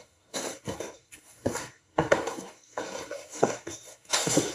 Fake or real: fake